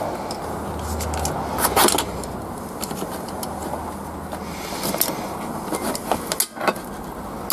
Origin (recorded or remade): recorded